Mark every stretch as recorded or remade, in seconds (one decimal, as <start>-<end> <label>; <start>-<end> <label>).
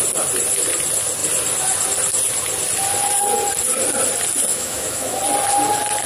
0.0-4.5 recorded; 4.5-5.2 remade; 5.2-6.1 recorded